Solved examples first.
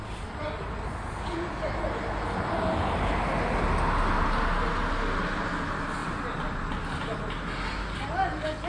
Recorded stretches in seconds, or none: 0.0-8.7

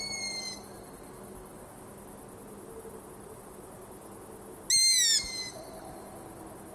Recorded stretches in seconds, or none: 0.0-6.7

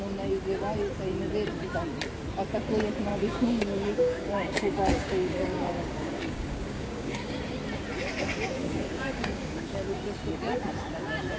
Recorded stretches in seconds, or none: 0.0-3.1; 7.3-8.6; 10.0-11.4

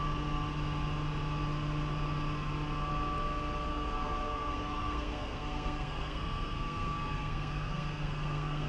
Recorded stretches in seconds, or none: 0.0-3.7